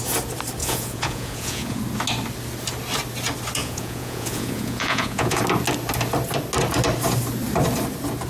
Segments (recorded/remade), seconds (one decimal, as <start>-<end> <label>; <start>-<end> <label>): 0.0-0.6 recorded; 0.6-1.8 remade; 1.8-3.6 recorded; 3.6-5.4 remade; 5.4-8.3 recorded